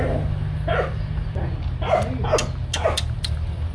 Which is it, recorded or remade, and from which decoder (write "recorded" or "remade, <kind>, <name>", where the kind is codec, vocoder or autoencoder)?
recorded